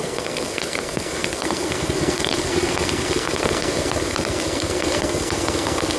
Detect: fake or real fake